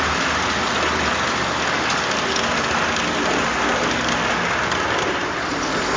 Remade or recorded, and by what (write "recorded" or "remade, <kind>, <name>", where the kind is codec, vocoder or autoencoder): recorded